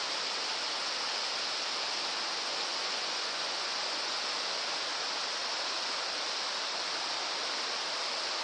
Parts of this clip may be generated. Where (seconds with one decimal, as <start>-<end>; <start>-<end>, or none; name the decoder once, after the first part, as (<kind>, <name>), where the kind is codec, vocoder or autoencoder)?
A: 2.5-4.2 (vocoder, Vocos)